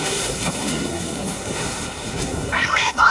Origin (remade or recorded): remade